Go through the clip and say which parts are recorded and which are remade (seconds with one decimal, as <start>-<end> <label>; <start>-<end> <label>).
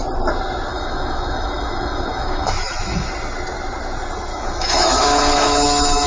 0.0-0.7 recorded; 0.7-3.1 remade; 3.1-4.3 recorded; 4.3-6.1 remade